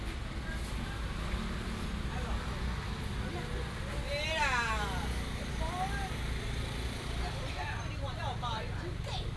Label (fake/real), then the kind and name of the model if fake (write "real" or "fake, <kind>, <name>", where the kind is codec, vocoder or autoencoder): real